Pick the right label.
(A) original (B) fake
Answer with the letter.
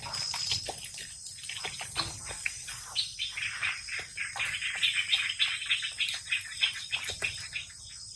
A